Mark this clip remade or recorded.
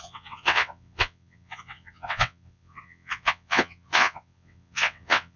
remade